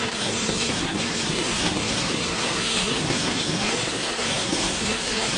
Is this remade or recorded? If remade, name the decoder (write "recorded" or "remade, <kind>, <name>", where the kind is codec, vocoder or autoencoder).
remade, codec, SNAC